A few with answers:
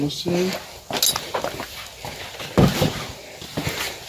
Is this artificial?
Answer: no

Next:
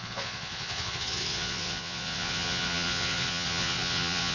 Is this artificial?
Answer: yes